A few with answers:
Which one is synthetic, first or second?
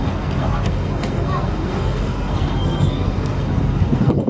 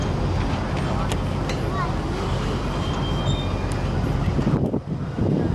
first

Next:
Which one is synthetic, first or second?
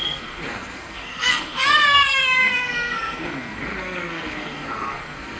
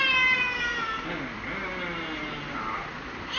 first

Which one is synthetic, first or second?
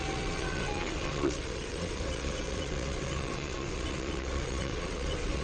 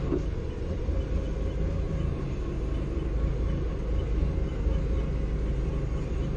first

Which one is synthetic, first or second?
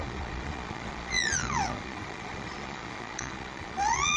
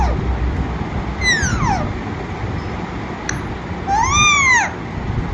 first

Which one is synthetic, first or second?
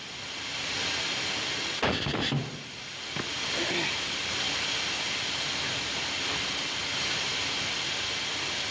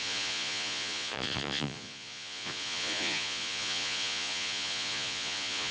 second